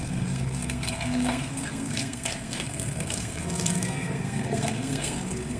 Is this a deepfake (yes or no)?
yes